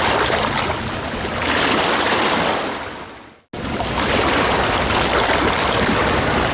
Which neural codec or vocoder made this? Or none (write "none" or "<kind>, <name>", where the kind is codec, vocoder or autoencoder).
none